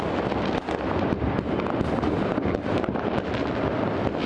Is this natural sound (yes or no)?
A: yes